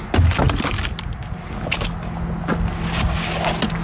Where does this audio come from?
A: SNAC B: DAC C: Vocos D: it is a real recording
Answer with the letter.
D